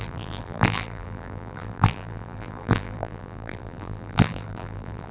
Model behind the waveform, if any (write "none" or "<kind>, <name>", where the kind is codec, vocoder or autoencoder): vocoder, BigVGAN v2